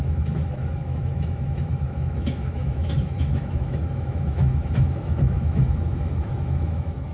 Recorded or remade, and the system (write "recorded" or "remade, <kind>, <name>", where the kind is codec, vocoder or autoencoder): remade, autoencoder, DAC-VAE